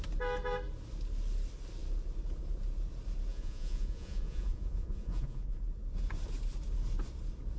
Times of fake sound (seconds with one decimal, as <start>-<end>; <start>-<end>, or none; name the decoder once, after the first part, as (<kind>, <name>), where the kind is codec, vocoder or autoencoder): 3.3-5.6 (vocoder, Vocos)